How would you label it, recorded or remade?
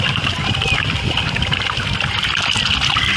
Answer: recorded